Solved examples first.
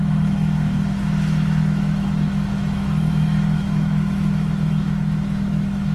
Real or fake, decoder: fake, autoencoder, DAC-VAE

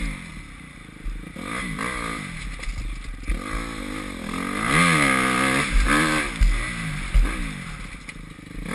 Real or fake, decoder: real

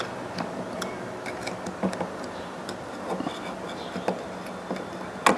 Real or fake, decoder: real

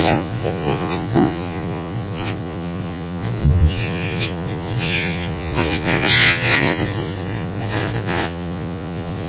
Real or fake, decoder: fake, vocoder, Vocos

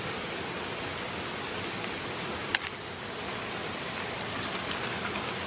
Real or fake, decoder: real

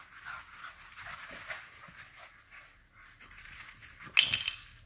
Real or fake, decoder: real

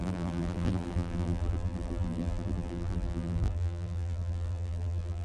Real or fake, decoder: fake, vocoder, BigVGAN v2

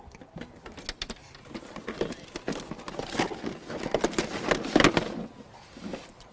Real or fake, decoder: real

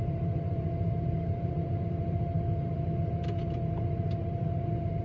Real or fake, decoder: fake, vocoder, BigVGAN v2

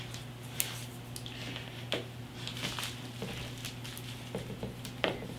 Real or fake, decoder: real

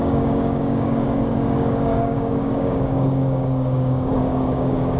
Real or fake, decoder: fake, codec, DAC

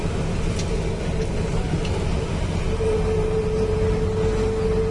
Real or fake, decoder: real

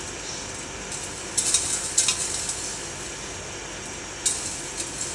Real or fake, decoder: real